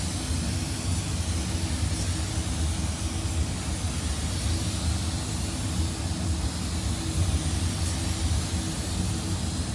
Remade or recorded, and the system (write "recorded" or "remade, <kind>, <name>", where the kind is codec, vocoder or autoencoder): recorded